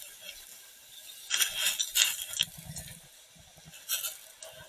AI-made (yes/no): no